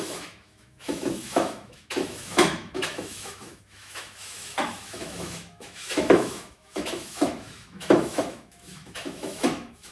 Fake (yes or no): yes